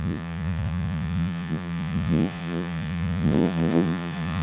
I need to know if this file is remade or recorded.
remade